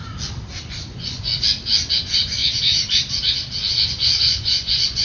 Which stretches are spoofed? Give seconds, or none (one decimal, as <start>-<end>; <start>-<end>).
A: 0.7-1.3; 1.9-2.4; 3.9-5.0